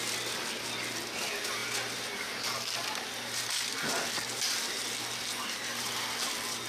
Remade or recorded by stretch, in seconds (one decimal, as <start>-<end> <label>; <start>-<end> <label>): 0.0-6.7 recorded

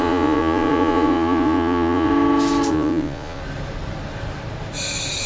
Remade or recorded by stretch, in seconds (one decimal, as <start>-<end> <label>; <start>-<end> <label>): 0.0-2.1 remade; 2.1-2.7 recorded; 2.7-3.4 remade; 3.4-5.3 recorded

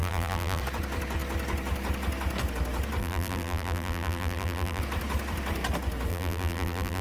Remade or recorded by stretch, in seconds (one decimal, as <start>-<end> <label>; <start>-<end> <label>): 0.0-0.6 remade; 0.6-3.0 recorded; 3.0-4.8 remade; 4.8-6.1 recorded; 6.1-7.0 remade

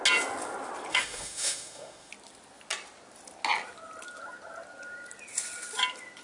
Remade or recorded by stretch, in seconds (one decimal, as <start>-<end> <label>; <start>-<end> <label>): 0.0-0.9 recorded; 0.9-2.1 remade; 2.1-6.2 recorded

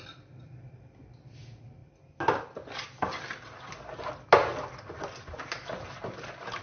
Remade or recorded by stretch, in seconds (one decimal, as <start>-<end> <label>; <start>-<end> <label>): 0.0-6.6 recorded